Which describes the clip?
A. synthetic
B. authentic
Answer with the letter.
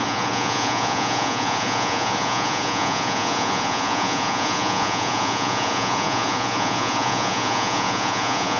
A